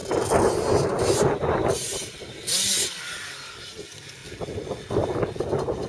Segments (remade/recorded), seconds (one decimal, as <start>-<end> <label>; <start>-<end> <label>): 0.0-5.9 recorded